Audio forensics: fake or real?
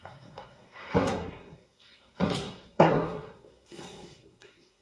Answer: fake